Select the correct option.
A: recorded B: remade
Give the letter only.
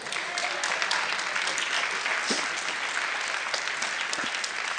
A